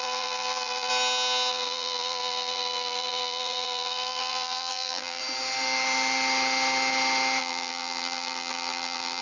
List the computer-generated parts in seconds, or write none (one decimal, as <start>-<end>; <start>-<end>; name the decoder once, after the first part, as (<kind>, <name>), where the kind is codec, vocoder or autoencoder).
0.0-0.9 (vocoder, BigVGAN v2); 1.5-5.2; 7.4-9.2